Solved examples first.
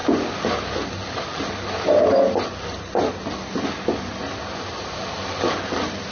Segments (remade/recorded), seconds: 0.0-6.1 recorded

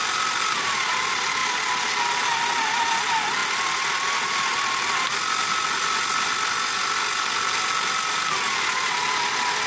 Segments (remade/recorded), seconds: 0.0-9.7 recorded